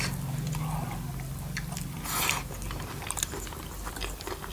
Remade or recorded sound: recorded